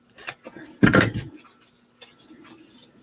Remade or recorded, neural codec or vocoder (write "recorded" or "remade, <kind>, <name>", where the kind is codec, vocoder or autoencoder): recorded